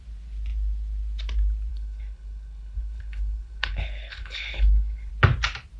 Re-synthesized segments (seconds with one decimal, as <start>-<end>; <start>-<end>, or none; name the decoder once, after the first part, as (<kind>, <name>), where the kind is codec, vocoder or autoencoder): 1.7-5.1 (codec, HILCodec)